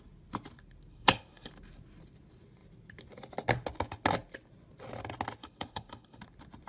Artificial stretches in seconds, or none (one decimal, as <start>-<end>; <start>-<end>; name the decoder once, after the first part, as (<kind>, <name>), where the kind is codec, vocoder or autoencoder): 0.9-1.5 (codec, HILCodec); 5.4-6.2